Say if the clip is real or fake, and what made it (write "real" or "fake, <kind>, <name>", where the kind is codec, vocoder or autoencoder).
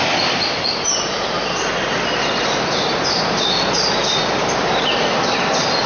real